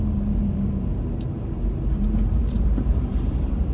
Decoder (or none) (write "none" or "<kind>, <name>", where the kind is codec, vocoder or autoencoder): vocoder, BigVGAN v2